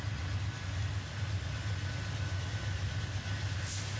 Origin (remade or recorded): recorded